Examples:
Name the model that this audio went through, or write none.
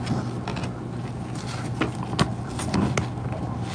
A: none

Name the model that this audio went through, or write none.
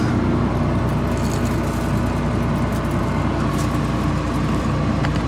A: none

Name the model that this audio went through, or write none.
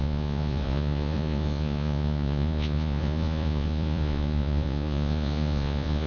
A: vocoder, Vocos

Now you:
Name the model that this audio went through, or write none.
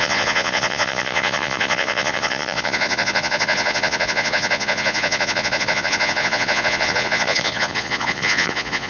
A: vocoder, Vocos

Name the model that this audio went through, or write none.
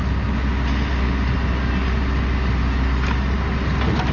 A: none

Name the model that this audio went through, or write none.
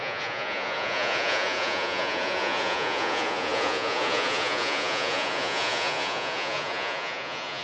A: vocoder, Vocos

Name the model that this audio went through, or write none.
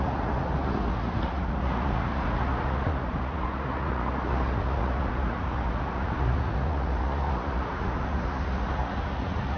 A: vocoder, Vocos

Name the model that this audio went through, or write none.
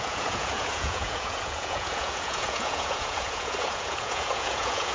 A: vocoder, Vocos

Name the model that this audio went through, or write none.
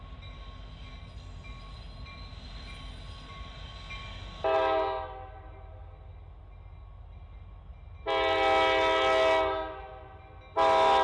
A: none